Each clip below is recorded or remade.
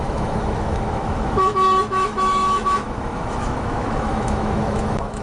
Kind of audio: remade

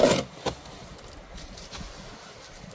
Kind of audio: recorded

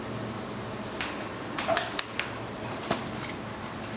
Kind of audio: recorded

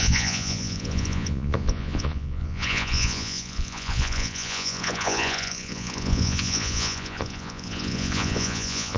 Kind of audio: remade